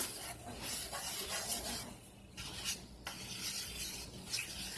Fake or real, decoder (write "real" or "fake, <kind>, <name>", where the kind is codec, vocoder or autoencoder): real